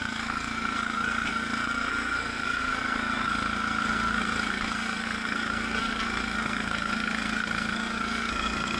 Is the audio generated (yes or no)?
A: yes